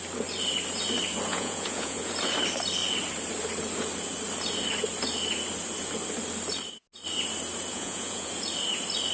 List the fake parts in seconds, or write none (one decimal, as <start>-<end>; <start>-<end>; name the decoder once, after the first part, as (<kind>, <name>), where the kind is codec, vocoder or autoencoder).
1.3-2.1 (vocoder, Vocos); 7.7-8.3